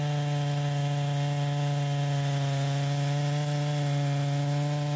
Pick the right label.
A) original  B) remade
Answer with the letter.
A